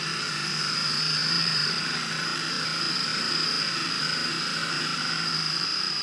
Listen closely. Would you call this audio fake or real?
fake